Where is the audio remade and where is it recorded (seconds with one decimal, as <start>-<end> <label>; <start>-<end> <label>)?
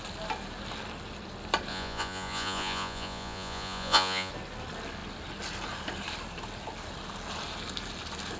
0.0-1.7 recorded; 1.7-4.3 remade; 4.3-8.4 recorded